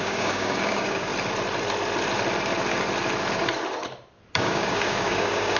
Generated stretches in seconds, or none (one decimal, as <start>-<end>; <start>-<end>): 0.0-1.1; 4.3-5.6

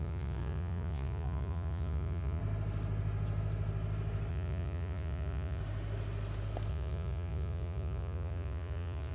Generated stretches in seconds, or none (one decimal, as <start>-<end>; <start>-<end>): 0.0-2.4; 4.3-5.6; 6.7-9.1